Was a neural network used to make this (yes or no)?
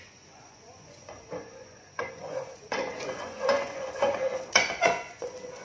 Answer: yes